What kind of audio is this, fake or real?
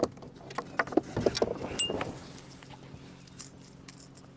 real